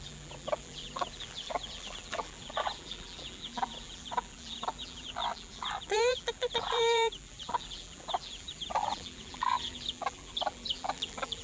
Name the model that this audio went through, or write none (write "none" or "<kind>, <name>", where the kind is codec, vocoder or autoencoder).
vocoder, BigVGAN v2